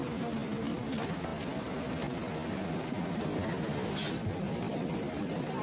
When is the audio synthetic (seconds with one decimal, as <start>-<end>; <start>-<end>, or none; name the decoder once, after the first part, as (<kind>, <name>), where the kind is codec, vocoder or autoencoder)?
none